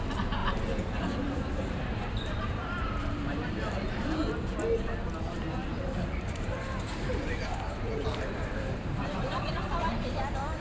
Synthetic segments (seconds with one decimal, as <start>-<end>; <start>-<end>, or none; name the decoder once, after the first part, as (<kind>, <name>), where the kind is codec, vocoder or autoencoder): 0.4-4.3 (vocoder, BigVGAN v2); 5.6-10.6